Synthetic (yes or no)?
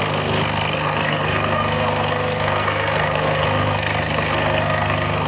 yes